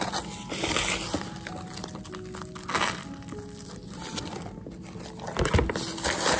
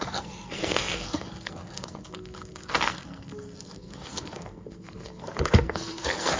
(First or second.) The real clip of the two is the first